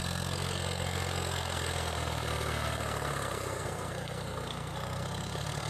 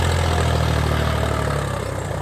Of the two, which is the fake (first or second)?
first